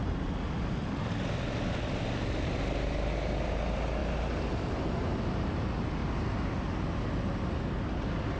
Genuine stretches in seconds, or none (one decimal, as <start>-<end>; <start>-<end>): 0.0-8.4